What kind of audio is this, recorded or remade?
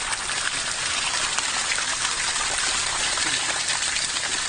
recorded